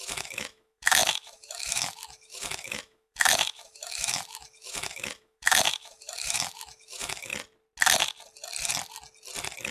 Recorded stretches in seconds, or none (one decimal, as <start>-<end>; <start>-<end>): 7.3-9.7